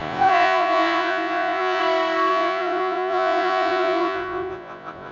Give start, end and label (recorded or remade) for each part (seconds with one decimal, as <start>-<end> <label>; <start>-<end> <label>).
0.0-1.8 remade; 1.8-2.3 recorded; 2.3-5.1 remade